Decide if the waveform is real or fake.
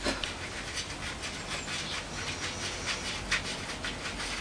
real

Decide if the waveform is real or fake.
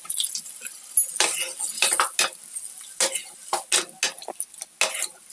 real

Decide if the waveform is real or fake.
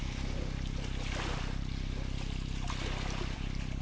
real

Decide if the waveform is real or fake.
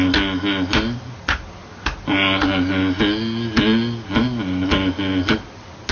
real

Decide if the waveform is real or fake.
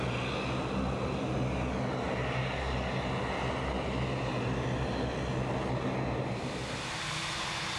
real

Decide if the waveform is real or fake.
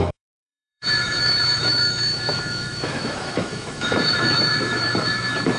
fake